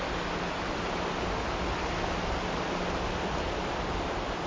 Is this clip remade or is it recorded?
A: recorded